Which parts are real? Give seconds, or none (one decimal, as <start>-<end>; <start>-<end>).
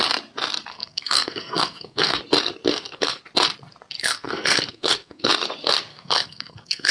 0.0-0.7; 2.2-2.7; 3.2-4.0; 5.3-5.9